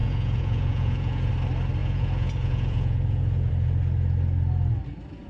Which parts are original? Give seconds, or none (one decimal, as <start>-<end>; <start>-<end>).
1.3-1.8; 3.5-5.3